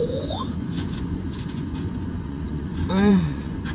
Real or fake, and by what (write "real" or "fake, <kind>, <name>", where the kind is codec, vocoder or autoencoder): fake, vocoder, Vocos